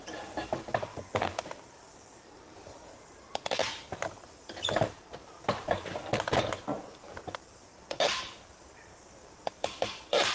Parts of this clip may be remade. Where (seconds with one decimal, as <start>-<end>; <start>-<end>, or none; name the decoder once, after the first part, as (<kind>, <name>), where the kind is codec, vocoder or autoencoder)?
0.0-7.7 (vocoder, BigVGAN v2); 8.6-10.3